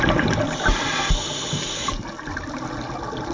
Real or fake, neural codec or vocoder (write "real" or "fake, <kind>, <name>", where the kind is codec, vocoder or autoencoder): real